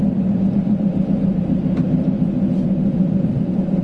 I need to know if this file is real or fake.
fake